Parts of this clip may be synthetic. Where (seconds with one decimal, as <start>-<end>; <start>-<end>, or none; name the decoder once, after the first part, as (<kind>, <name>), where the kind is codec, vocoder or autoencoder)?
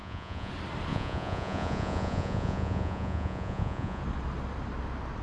0.0-0.5 (vocoder, Vocos); 0.9-4.0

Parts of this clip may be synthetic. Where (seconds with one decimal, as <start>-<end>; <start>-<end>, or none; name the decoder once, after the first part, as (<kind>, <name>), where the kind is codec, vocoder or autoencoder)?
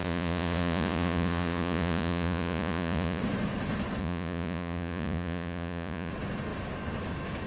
0.0-3.2 (vocoder, Vocos); 4.0-6.1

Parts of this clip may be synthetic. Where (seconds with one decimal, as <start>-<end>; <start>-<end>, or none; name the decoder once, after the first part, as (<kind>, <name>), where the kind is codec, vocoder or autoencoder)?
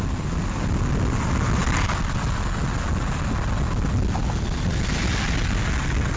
none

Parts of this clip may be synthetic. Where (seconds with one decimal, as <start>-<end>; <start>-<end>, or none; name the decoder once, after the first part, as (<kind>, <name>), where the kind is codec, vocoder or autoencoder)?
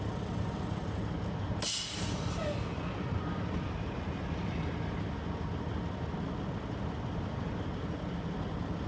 none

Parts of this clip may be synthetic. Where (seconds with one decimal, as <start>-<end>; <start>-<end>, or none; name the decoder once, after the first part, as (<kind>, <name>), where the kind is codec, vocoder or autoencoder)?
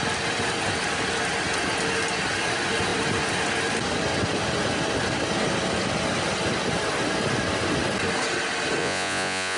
8.8-9.6 (vocoder, Vocos)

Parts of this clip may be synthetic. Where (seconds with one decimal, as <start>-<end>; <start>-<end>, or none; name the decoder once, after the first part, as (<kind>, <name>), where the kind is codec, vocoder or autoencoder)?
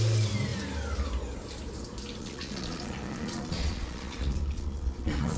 2.2-5.4 (vocoder, Vocos)